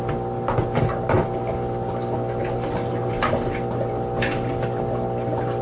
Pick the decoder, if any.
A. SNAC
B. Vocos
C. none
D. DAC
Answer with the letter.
C